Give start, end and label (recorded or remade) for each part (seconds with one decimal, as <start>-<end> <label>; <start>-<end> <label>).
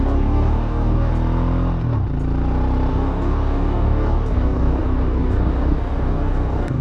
0.0-1.1 remade; 1.1-2.9 recorded; 2.9-6.8 remade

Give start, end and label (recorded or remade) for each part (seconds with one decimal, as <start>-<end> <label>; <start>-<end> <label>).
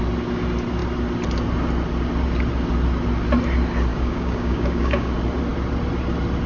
0.0-3.9 recorded; 3.9-5.1 remade; 5.1-6.5 recorded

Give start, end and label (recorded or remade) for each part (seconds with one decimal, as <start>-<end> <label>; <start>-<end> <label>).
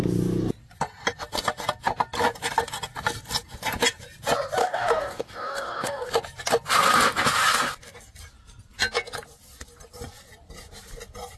0.0-4.6 recorded; 4.6-6.1 remade; 6.1-11.4 recorded